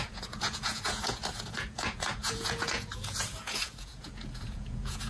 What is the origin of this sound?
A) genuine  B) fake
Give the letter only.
B